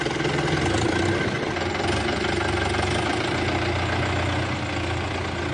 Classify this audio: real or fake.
real